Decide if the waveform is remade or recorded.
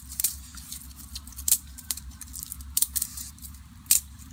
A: remade